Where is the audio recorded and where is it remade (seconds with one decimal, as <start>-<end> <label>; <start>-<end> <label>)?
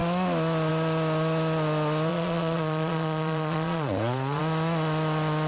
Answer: 0.0-2.1 recorded; 2.1-4.4 remade; 4.4-5.5 recorded